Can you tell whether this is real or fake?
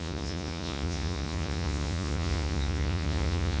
fake